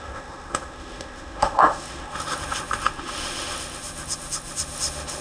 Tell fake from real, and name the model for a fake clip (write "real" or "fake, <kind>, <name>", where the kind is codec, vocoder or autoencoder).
fake, autoencoder, DAC-VAE